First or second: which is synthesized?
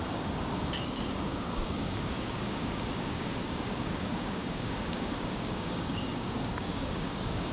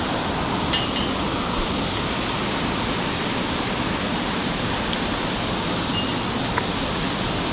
first